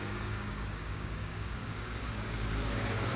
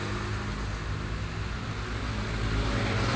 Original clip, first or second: second